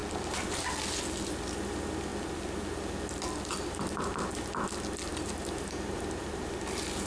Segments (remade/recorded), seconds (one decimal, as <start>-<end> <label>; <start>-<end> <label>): 0.0-5.1 recorded; 5.1-6.6 remade; 6.6-7.1 recorded